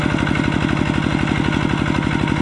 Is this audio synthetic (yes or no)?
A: no